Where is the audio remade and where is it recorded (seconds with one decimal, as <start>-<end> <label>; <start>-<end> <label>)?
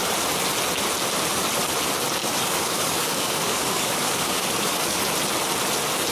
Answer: 0.0-2.2 recorded; 2.2-5.0 remade; 5.0-6.1 recorded